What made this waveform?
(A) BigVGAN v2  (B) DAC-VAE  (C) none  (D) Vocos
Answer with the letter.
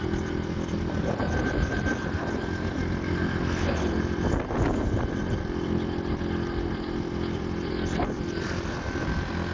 C